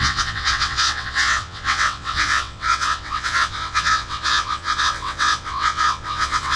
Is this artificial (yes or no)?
yes